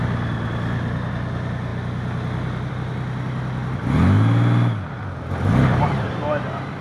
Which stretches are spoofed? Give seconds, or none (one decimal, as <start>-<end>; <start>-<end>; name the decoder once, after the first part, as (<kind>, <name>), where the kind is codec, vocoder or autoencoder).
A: none